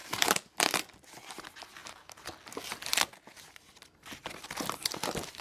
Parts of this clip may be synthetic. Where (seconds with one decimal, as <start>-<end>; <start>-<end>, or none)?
0.0-0.8; 1.8-2.3; 4.2-5.4